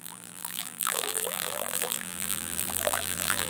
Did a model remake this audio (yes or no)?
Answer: yes